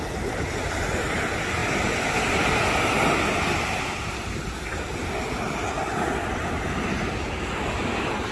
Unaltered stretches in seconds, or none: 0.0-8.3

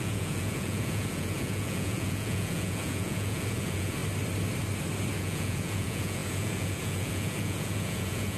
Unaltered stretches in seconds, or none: 4.0-5.2

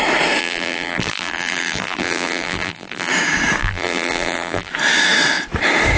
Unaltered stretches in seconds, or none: 0.0-0.4; 3.1-3.6; 4.7-6.0

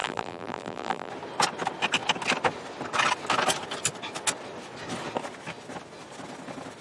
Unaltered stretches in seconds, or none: 1.1-6.8

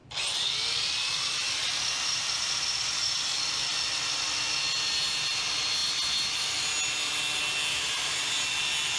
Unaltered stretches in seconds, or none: 0.0-9.0

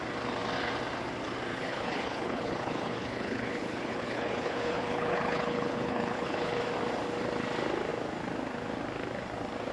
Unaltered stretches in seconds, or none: 0.0-1.5; 6.6-9.7

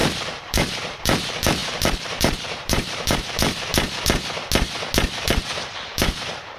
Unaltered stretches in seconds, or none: 3.7-5.3